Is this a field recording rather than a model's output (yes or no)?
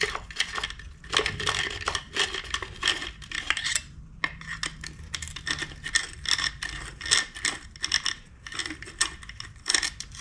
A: yes